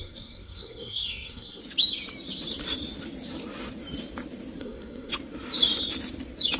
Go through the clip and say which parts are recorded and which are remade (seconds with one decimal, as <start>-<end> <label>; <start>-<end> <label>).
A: 0.0-1.6 remade; 1.6-4.6 recorded; 4.6-5.1 remade; 5.1-6.6 recorded